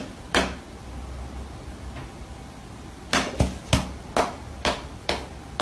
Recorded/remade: recorded